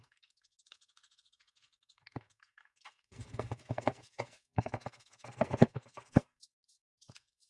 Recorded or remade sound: remade